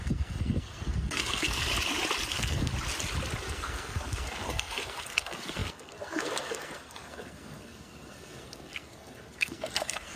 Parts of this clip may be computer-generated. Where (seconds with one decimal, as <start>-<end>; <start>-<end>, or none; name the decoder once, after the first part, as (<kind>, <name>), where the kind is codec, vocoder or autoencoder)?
0.0-1.7 (codec, SNAC); 2.3-2.7; 3.4-10.2